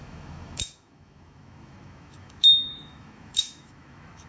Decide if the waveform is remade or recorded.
remade